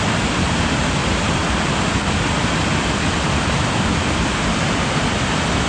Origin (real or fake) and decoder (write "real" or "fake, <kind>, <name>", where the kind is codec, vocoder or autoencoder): real